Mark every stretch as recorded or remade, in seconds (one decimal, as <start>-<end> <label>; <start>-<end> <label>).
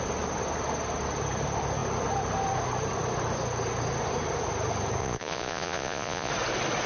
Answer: 0.0-5.0 recorded; 5.0-6.3 remade; 6.3-6.9 recorded